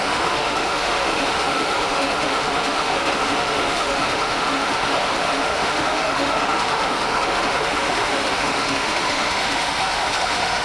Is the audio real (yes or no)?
no